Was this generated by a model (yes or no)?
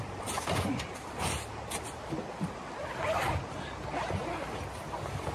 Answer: no